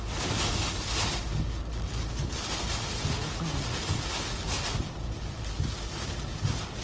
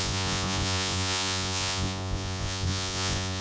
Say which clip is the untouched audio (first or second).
first